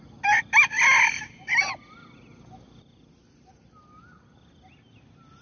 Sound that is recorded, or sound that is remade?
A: recorded